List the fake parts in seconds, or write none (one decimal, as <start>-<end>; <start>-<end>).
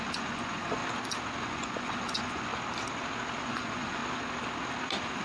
0.0-0.8; 1.4-2.5; 3.4-4.0